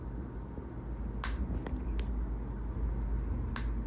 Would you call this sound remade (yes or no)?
no